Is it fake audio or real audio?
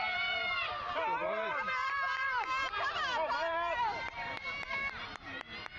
fake